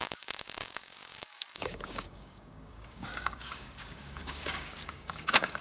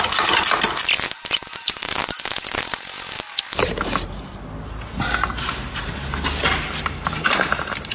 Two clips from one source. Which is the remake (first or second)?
first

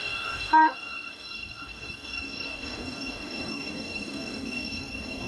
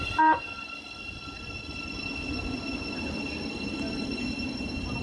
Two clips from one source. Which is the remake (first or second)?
first